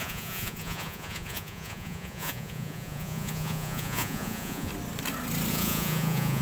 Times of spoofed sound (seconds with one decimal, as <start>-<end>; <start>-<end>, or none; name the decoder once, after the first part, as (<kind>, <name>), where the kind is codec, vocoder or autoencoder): 0.0-4.7 (vocoder, Vocos); 5.5-6.4